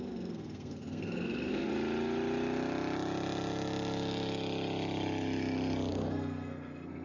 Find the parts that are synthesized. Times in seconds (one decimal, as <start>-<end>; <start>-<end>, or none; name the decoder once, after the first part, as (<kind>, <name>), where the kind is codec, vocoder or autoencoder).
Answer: 0.0-1.7 (codec, SNAC); 5.9-7.0